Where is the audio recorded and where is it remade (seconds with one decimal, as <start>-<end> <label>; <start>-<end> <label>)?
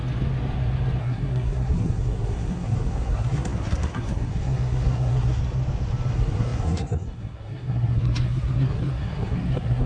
0.0-1.0 recorded; 1.0-5.4 remade; 5.4-6.1 recorded; 6.1-9.9 remade